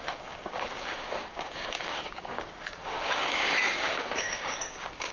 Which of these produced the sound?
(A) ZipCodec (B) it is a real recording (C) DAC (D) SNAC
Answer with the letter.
C